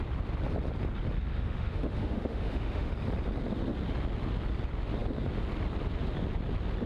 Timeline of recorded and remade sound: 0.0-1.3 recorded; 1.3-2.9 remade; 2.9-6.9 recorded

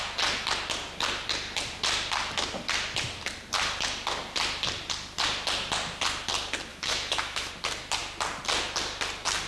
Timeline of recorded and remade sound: 0.0-6.7 recorded; 6.7-7.5 remade; 7.5-9.5 recorded

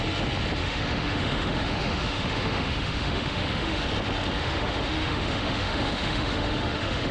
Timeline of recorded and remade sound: 0.0-0.6 recorded; 0.6-3.8 remade; 3.8-4.4 recorded; 4.4-7.1 remade

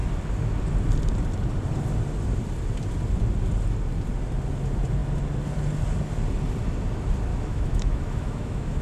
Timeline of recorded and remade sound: 0.0-7.3 recorded; 7.3-8.8 remade